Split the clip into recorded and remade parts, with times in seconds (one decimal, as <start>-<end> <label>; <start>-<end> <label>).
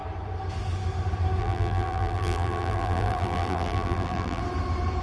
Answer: 0.0-1.4 recorded; 1.4-4.4 remade; 4.4-5.0 recorded